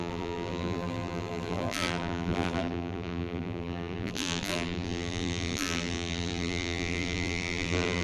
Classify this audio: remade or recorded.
remade